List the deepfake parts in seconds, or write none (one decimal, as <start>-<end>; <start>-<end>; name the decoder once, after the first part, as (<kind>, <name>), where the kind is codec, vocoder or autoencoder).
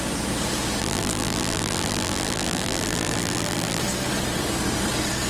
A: 0.8-3.8 (vocoder, BigVGAN v2)